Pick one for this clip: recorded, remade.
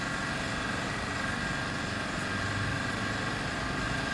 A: recorded